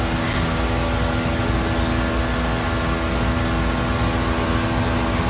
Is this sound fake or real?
real